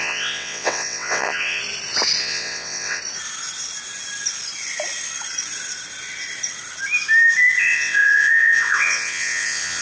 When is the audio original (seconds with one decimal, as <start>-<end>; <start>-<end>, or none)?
1.6-2.2; 3.0-7.6